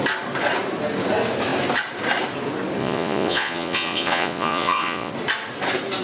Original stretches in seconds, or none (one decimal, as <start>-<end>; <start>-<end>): 0.0-2.8; 5.1-6.0